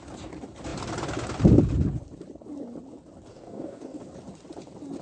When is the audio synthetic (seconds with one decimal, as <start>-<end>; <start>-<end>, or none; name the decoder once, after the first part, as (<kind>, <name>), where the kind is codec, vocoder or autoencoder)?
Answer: 3.3-4.0 (codec, DAC)